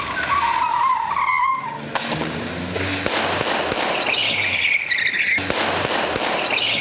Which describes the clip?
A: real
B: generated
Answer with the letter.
A